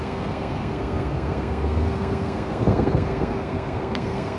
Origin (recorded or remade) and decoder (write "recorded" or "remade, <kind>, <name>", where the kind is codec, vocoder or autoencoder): remade, codec, SNAC